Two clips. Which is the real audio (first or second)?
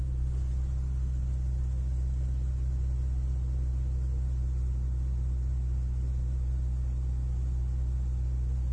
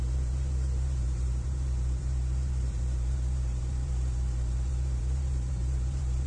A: first